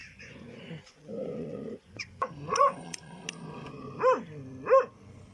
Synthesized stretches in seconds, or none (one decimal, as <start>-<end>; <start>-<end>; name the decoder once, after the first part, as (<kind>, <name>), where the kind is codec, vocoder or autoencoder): 0.0-3.2 (vocoder, Vocos)